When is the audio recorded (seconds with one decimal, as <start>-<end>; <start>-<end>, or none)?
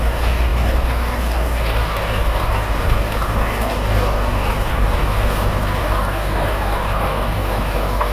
none